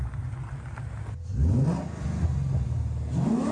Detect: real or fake real